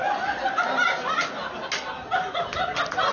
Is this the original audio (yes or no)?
yes